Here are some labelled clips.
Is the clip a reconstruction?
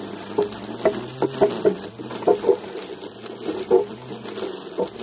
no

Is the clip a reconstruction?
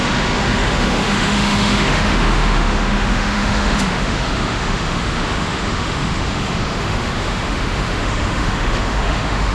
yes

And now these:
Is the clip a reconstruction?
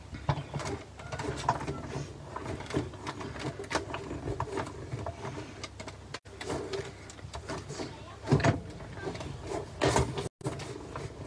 no